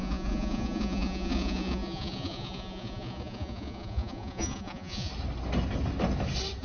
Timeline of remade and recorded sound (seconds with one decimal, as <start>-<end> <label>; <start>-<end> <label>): 0.0-5.1 remade; 5.1-6.6 recorded